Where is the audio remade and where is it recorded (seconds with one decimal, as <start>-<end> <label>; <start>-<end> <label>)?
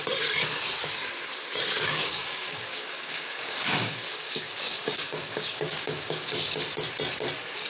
0.0-1.7 recorded; 1.7-6.3 remade; 6.3-7.7 recorded